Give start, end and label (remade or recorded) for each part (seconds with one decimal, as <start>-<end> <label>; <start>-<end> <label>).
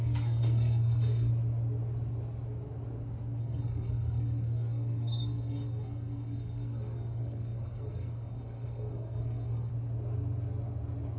0.0-1.3 remade; 1.3-3.4 recorded; 3.4-9.7 remade; 9.7-11.2 recorded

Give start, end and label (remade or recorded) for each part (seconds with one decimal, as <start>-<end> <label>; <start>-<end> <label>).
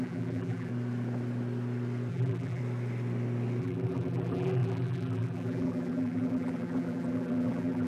0.0-0.7 remade; 0.7-2.1 recorded; 2.1-2.6 remade; 2.6-3.6 recorded; 3.6-7.9 remade